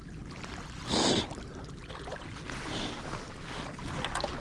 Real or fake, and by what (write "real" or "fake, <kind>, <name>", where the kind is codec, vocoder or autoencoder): real